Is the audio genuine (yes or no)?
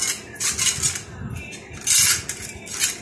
yes